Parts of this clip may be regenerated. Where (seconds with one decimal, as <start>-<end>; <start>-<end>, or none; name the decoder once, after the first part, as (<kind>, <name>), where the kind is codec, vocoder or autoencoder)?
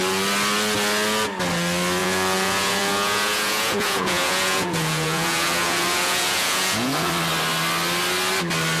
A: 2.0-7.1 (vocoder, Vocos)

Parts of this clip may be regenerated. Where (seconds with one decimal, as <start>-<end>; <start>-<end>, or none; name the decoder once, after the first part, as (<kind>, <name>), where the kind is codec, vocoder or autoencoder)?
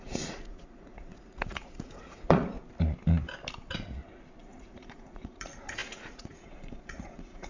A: 0.0-2.6 (vocoder, Vocos); 4.4-7.5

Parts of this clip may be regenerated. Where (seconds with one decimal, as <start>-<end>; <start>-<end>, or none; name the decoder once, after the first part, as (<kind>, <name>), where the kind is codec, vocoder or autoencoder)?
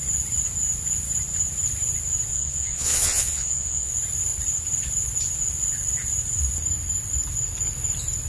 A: 2.3-3.9 (vocoder, Vocos)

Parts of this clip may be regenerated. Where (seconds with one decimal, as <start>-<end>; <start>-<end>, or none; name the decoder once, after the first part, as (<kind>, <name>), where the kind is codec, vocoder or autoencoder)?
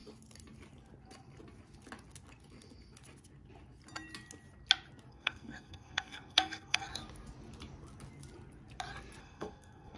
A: 5.1-6.9 (codec, SNAC); 9.2-10.0